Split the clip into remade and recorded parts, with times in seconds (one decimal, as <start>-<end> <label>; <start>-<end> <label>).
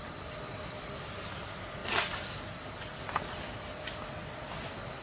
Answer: 0.0-5.0 recorded